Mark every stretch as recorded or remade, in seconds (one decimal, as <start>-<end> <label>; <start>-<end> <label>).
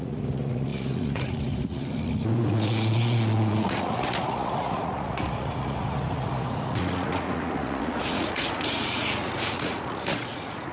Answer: 0.0-10.7 remade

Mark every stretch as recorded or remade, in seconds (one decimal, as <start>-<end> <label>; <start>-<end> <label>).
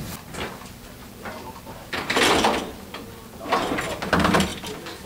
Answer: 0.0-5.1 recorded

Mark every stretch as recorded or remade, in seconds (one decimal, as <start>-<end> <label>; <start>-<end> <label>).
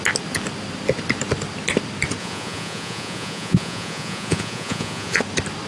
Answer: 0.0-2.2 recorded; 2.2-5.2 remade; 5.2-5.7 recorded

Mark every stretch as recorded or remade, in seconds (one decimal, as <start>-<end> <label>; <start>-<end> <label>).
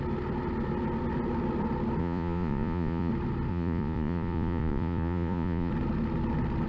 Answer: 0.0-2.0 recorded; 2.0-3.1 remade; 3.1-3.5 recorded; 3.5-5.7 remade; 5.7-6.7 recorded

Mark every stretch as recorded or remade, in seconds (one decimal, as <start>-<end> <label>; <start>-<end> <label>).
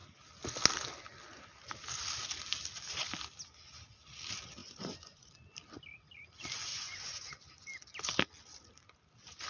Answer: 0.0-4.6 recorded; 4.6-5.3 remade; 5.3-6.7 recorded; 6.7-7.3 remade; 7.3-9.5 recorded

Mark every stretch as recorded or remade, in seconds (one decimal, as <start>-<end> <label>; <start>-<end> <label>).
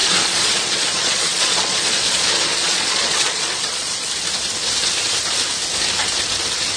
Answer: 0.0-4.1 remade; 4.1-6.8 recorded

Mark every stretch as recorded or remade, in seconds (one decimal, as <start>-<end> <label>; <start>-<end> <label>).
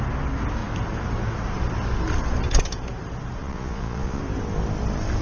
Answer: 0.0-3.4 recorded; 3.4-4.2 remade; 4.2-5.2 recorded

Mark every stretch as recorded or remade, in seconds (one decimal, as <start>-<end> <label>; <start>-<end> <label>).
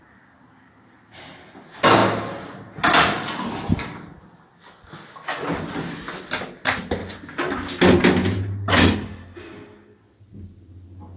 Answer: 0.0-11.2 recorded